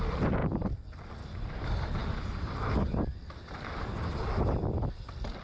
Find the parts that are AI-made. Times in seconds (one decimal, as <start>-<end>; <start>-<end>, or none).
none